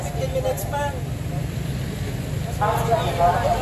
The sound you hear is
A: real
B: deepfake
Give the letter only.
A